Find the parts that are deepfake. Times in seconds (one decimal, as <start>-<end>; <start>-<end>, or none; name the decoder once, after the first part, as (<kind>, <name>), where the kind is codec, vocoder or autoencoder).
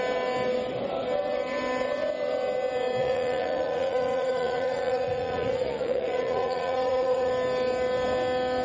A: 3.0-7.3 (vocoder, Vocos)